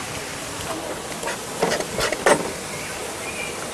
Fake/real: real